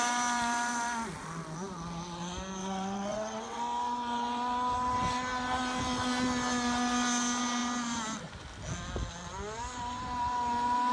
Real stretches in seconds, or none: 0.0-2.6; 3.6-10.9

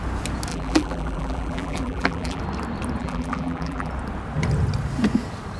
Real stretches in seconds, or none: 0.0-0.5; 2.4-3.0; 3.9-5.6

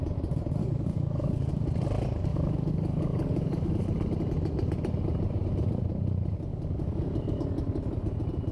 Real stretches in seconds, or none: 0.0-0.6; 1.5-2.3; 3.7-6.5; 7.4-8.5

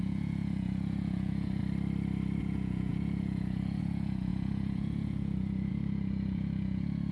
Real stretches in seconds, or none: 1.6-2.4

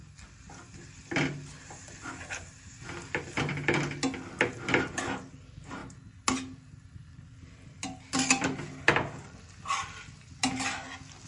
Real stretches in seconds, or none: 0.0-11.3

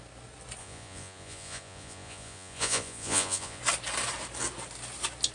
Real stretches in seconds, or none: 0.0-0.6; 3.6-5.3

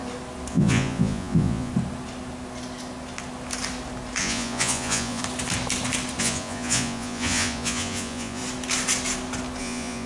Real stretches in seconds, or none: 0.0-0.5; 1.7-4.2; 5.2-6.2; 8.4-9.6

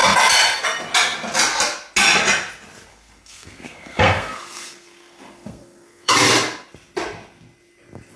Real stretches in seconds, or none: 0.0-2.9; 6.1-8.2